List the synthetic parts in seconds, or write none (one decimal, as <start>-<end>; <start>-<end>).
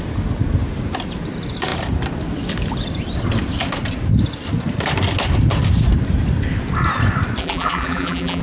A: 7.4-8.4